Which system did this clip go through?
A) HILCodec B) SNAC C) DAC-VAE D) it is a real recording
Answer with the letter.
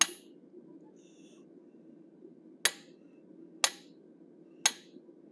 D